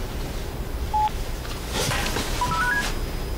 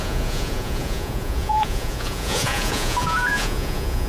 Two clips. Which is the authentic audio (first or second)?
first